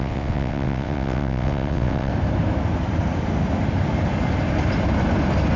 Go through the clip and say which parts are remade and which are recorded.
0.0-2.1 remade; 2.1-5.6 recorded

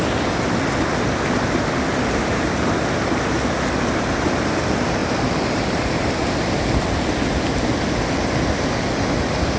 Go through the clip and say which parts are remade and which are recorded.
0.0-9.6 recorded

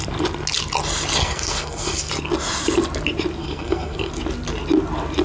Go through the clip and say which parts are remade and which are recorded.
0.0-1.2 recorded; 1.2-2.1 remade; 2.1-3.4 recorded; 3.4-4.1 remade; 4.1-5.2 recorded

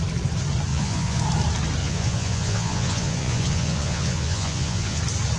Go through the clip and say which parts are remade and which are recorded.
0.0-0.7 recorded; 0.7-1.2 remade; 1.2-1.8 recorded; 1.8-5.0 remade; 5.0-5.4 recorded